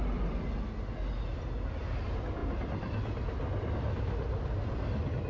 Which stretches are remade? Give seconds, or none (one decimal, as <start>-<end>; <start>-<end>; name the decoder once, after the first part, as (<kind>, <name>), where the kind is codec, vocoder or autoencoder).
none